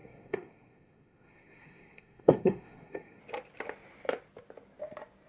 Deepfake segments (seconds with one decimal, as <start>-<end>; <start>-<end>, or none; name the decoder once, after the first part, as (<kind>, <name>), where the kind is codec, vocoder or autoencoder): 0.0-3.2 (codec, SNAC)